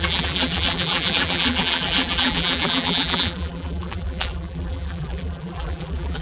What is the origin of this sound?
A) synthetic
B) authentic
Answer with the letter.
A